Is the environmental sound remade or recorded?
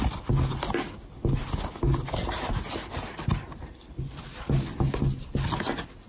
recorded